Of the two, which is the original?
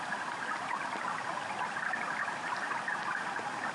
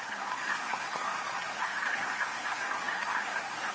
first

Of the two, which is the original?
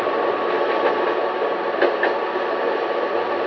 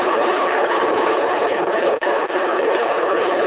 first